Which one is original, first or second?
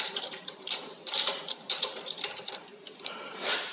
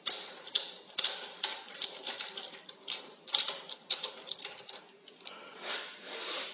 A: second